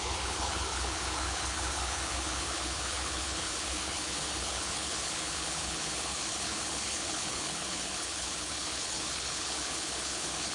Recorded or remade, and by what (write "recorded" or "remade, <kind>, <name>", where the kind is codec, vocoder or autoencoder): remade, codec, HILCodec